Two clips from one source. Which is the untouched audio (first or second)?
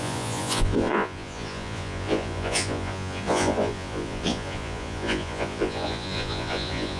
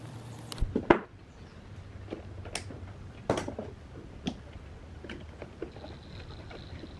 second